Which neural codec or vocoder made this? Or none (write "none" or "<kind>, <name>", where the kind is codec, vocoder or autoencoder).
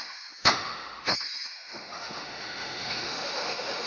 autoencoder, DAC-VAE